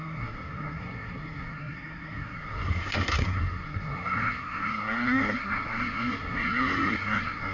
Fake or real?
fake